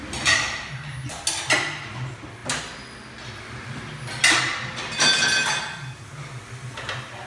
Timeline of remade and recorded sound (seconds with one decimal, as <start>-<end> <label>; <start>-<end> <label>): 0.0-7.3 recorded